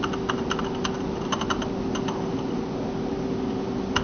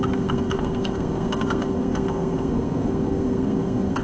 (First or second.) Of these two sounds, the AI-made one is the second